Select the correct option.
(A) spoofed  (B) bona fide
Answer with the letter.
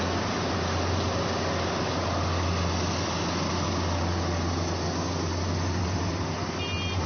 B